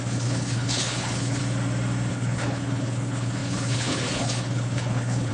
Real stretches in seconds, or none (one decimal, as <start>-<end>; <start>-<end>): 1.4-2.1